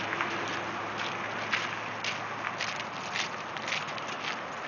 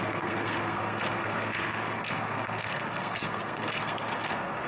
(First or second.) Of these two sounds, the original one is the first